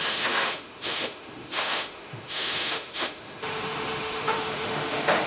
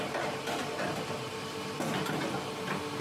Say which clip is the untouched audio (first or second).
second